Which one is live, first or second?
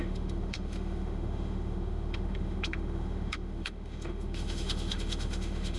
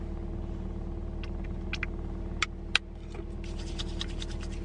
second